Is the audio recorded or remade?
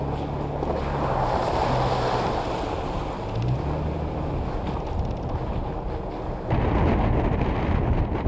recorded